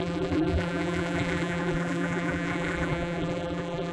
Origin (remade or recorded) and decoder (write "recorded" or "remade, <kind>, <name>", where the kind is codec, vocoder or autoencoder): remade, vocoder, BigVGAN v2